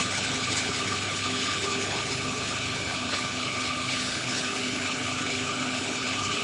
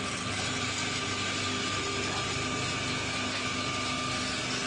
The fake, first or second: first